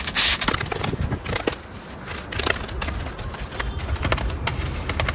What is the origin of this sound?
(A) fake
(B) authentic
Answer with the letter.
B